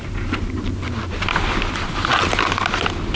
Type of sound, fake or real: real